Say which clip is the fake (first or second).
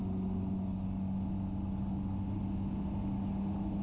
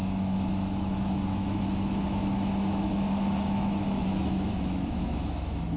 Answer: second